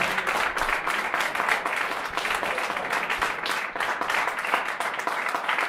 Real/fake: real